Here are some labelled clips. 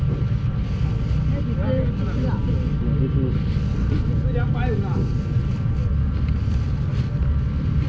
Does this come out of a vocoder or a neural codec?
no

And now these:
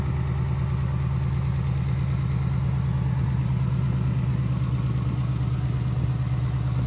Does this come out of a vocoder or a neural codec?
no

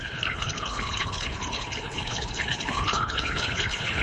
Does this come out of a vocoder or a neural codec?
yes